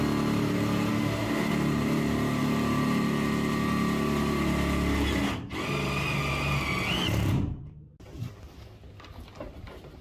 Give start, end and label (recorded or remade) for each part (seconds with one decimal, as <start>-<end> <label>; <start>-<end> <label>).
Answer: 0.0-0.9 recorded; 0.9-1.5 remade; 1.5-10.0 recorded